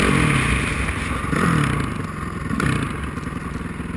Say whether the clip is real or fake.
real